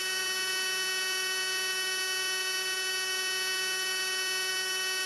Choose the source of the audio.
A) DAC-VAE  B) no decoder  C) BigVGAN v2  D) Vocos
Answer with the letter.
B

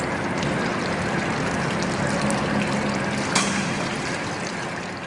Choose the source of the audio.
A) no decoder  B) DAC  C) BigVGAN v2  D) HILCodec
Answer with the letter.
A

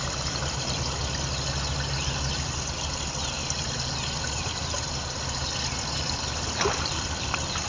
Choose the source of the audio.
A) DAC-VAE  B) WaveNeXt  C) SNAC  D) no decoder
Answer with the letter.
D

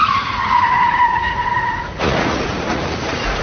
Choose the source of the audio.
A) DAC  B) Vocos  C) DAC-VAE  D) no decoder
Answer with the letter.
B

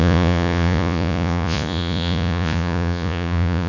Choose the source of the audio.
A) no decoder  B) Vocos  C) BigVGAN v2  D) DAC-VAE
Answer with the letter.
B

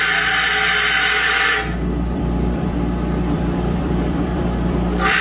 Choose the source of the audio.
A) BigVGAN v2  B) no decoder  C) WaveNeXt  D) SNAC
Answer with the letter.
A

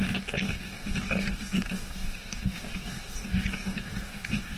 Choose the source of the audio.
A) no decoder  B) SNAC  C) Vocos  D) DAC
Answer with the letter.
D